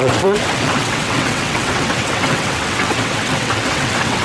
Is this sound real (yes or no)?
no